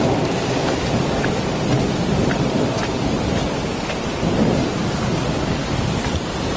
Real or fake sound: real